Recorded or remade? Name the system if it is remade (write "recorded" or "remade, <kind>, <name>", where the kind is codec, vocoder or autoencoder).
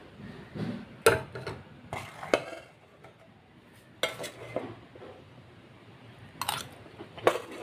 recorded